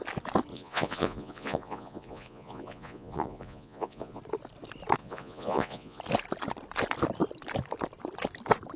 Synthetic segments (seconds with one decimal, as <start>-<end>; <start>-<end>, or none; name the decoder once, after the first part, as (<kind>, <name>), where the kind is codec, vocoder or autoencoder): 0.5-4.2 (vocoder, Vocos); 5.0-6.0